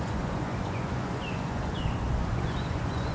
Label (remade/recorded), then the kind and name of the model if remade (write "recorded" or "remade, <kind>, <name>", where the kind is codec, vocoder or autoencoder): remade, vocoder, Vocos